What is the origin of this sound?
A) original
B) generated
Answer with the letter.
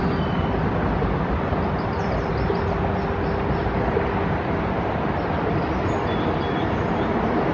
A